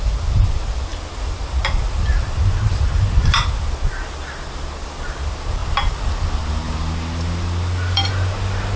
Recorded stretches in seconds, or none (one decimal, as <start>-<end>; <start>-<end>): 0.0-8.8